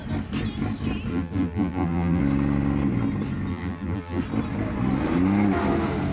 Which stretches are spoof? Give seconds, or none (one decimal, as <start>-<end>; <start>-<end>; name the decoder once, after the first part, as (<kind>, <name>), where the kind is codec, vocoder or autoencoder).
1.1-2.2 (vocoder, BigVGAN v2); 3.5-4.2